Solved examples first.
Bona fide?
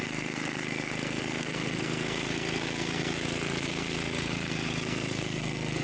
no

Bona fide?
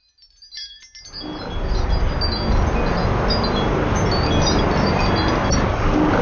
yes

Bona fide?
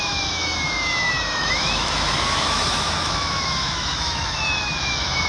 no